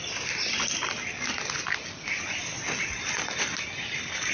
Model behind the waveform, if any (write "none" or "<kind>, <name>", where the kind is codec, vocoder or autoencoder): none